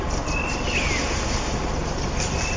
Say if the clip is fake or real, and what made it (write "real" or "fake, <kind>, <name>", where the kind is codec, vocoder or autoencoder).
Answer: real